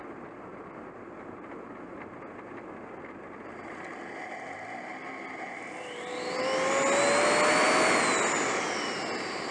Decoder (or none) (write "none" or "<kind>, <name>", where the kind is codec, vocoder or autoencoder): none